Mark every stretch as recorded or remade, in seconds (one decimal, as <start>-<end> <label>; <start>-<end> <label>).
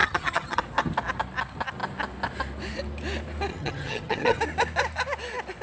0.0-0.6 remade; 0.6-3.5 recorded; 3.5-4.4 remade; 4.4-5.6 recorded